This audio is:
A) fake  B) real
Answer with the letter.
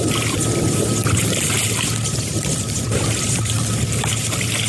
B